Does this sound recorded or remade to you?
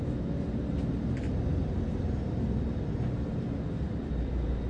recorded